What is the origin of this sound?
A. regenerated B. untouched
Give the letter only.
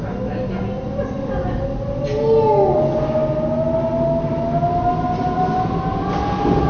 B